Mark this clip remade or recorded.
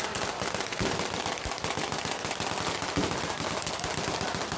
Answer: recorded